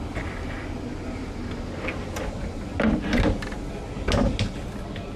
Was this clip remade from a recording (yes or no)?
no